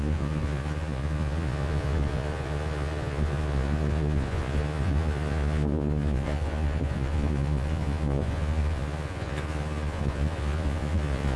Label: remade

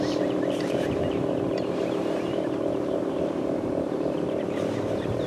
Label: remade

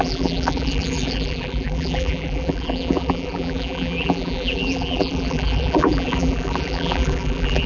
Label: remade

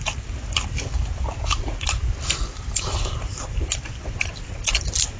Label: recorded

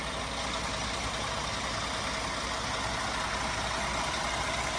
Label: recorded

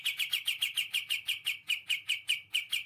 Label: recorded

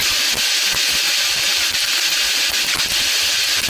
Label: recorded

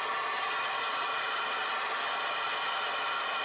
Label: recorded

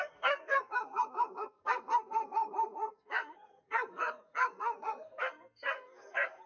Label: remade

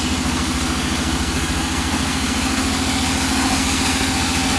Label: remade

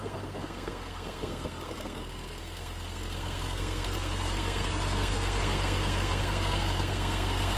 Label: remade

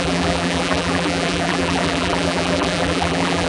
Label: remade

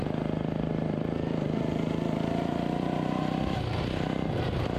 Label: recorded